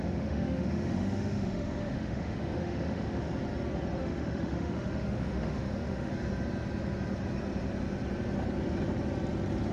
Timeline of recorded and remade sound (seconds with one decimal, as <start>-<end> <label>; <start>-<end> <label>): 0.0-3.3 remade; 3.3-4.0 recorded; 4.0-6.1 remade; 6.1-9.7 recorded